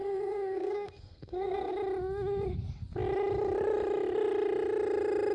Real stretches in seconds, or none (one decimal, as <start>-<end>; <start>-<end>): 1.7-5.3